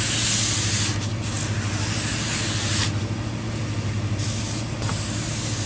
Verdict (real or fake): real